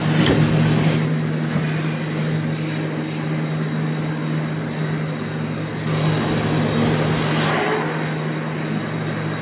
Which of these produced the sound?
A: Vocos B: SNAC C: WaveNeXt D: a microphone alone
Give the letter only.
D